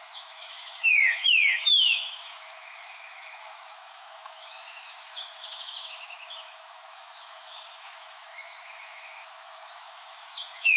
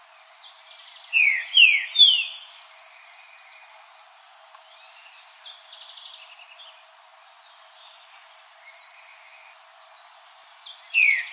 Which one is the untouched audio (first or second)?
second